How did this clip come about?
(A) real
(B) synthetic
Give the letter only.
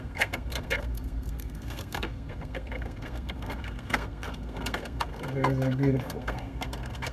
B